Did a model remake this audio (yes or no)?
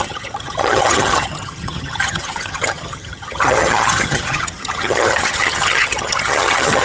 yes